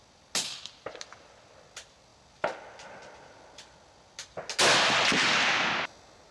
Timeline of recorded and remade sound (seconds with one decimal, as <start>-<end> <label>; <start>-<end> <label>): 0.0-6.3 recorded